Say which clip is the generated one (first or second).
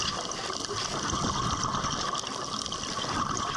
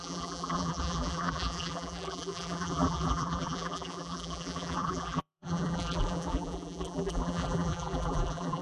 second